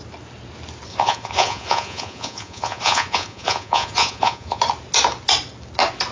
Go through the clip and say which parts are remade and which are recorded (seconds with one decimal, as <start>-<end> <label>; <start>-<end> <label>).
0.0-0.9 recorded; 0.9-4.6 remade; 4.6-6.1 recorded